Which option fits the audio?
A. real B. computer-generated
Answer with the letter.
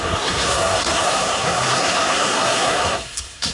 B